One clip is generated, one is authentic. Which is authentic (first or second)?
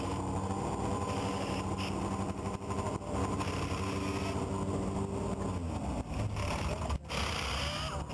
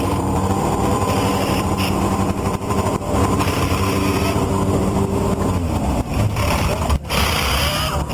first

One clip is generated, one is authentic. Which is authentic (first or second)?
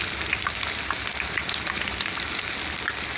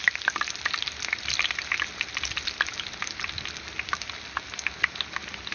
second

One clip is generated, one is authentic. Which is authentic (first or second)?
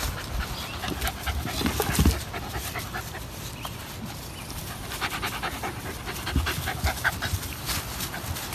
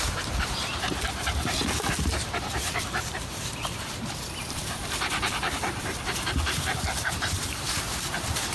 first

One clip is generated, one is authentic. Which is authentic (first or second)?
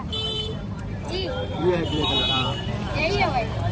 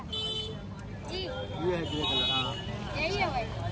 second